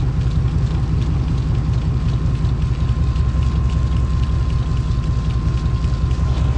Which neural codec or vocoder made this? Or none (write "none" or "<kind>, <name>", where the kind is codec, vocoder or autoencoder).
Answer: none